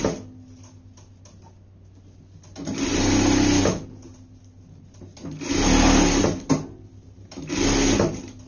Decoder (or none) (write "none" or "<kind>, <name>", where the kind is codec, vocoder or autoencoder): none